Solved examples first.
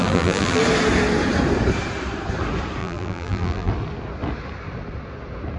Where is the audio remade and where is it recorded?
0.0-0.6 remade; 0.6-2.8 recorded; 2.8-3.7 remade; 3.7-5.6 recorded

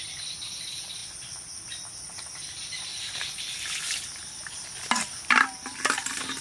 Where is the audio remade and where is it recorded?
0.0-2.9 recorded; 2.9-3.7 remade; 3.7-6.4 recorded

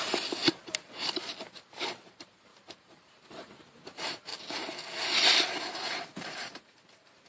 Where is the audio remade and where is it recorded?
0.0-0.4 remade; 0.4-1.8 recorded; 1.8-4.3 remade; 4.3-5.6 recorded; 5.6-7.3 remade